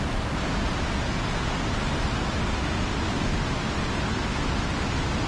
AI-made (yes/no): no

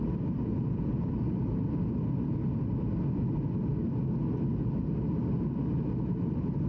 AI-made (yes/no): no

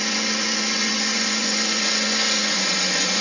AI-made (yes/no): yes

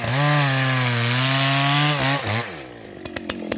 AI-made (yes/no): no